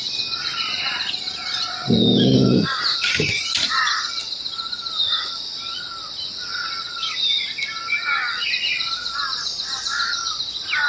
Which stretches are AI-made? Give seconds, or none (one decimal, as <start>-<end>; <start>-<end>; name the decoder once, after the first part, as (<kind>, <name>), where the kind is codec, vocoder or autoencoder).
0.0-4.2 (vocoder, BigVGAN v2); 8.9-10.9